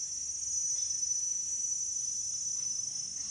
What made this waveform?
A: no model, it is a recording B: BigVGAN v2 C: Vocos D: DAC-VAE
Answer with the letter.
B